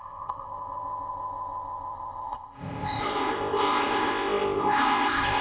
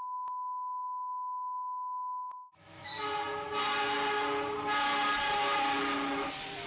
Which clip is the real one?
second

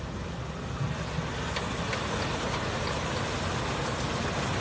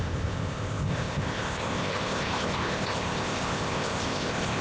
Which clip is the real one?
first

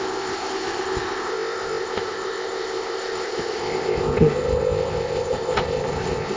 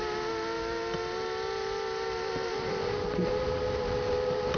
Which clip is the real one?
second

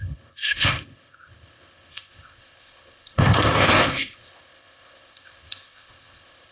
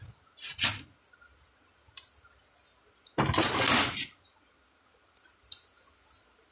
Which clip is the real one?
second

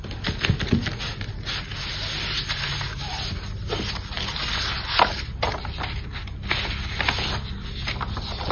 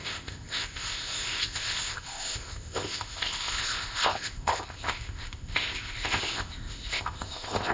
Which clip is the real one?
first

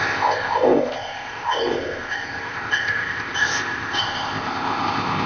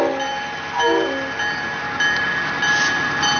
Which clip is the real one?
second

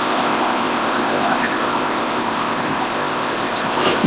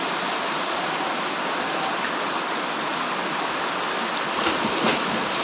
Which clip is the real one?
second